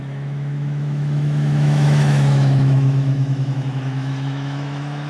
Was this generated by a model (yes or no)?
yes